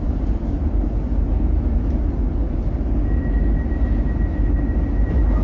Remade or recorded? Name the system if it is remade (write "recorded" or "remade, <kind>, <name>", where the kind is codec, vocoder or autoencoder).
recorded